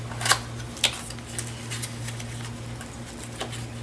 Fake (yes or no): no